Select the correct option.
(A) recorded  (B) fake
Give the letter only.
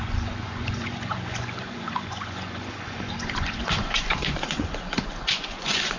B